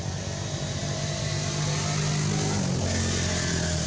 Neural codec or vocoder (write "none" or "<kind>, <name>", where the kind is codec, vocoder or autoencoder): none